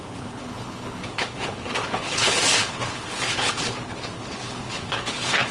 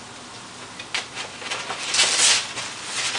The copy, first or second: first